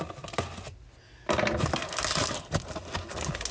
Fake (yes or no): no